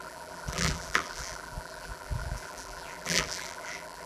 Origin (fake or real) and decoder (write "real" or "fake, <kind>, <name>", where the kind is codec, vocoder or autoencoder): fake, vocoder, BigVGAN v2